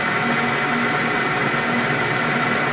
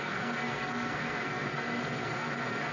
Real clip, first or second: first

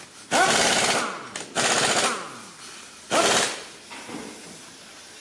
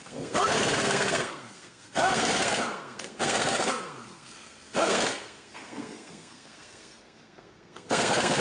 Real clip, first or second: first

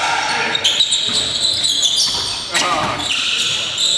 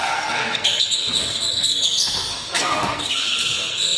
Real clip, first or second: first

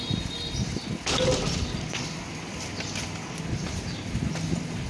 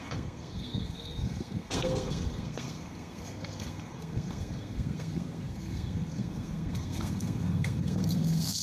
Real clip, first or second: first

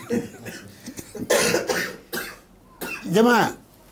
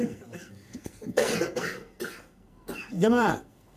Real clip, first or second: first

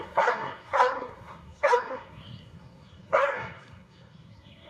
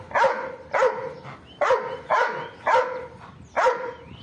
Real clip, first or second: second